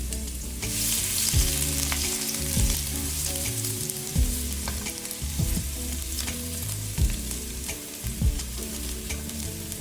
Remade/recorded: remade